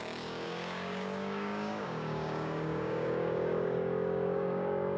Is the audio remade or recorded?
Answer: remade